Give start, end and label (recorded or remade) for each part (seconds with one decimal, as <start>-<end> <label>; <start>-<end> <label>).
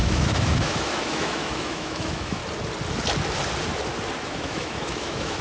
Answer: 0.0-2.4 remade; 2.4-4.2 recorded; 4.2-5.4 remade